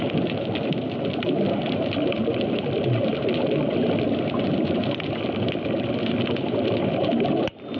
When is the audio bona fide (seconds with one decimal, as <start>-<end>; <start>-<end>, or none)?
0.0-7.8